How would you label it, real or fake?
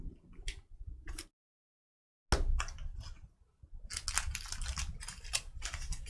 real